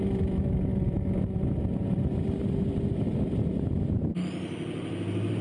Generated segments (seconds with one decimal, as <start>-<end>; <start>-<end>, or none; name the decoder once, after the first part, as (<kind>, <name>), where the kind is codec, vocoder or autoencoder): none